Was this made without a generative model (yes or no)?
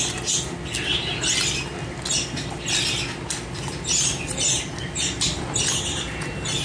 yes